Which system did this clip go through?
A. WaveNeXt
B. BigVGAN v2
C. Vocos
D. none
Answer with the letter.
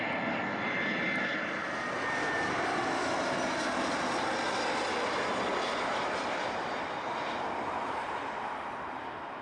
D